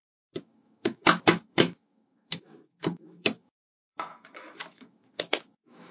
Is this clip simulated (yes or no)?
yes